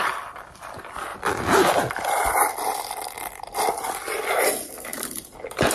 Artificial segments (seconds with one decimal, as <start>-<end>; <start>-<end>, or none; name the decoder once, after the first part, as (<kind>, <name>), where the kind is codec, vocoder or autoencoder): 0.0-5.7 (vocoder, BigVGAN v2)